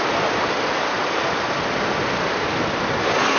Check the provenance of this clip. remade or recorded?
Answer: recorded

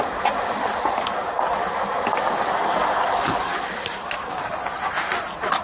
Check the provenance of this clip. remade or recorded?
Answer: recorded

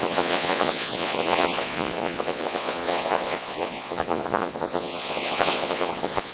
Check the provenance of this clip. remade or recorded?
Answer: remade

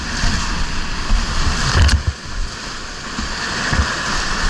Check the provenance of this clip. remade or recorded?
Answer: recorded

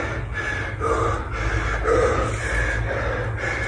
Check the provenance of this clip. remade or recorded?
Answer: recorded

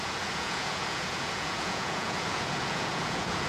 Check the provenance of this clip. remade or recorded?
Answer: remade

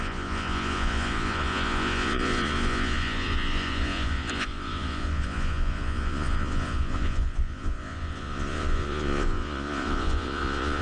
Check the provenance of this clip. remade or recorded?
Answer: remade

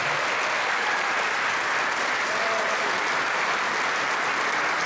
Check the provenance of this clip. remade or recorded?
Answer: recorded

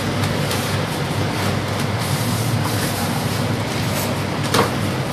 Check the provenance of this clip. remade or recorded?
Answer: recorded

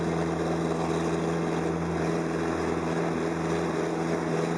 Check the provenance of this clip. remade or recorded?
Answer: recorded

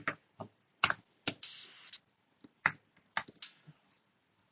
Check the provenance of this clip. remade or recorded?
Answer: recorded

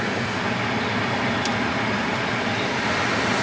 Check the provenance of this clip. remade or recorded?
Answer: recorded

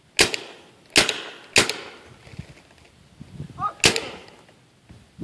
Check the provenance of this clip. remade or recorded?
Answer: recorded